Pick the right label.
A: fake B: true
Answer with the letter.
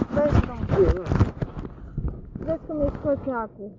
B